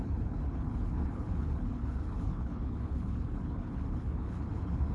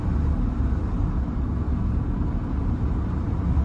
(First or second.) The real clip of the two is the second